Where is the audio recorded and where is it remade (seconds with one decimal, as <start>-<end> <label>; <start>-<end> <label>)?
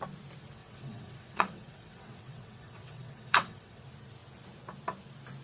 0.0-0.6 recorded; 0.6-3.8 remade; 3.8-5.4 recorded